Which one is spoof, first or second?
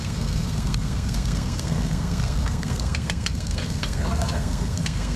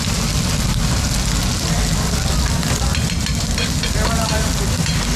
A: first